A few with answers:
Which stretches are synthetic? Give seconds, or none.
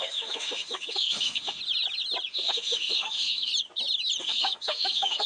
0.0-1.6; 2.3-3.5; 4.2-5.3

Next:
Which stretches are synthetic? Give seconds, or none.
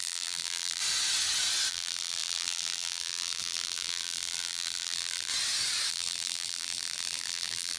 0.0-0.8; 1.7-5.3; 5.9-7.8